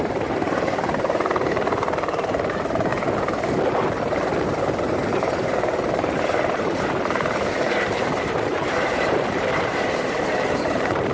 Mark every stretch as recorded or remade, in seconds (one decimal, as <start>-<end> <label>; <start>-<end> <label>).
0.0-2.9 remade; 2.9-3.7 recorded; 3.7-4.3 remade; 4.3-5.0 recorded; 5.0-11.1 remade